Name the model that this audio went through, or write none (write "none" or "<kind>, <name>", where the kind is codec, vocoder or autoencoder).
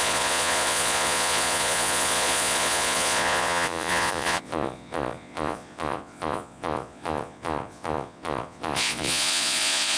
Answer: vocoder, Vocos